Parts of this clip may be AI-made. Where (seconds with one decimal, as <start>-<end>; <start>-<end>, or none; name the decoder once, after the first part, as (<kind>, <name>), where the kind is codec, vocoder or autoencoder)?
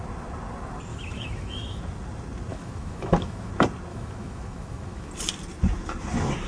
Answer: 0.9-1.8 (autoencoder, DAC-VAE); 2.5-3.5; 3.9-5.1